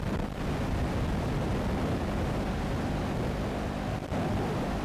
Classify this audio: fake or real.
fake